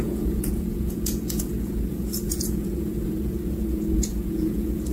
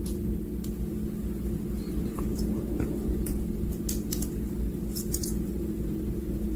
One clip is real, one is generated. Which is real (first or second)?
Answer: second